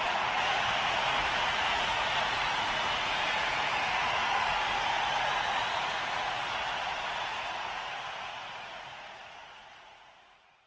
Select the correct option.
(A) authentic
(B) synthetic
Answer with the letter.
B